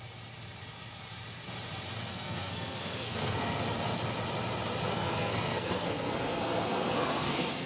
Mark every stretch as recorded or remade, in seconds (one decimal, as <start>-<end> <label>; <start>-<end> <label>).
0.0-2.0 recorded; 2.0-3.6 remade; 3.6-4.9 recorded; 4.9-7.7 remade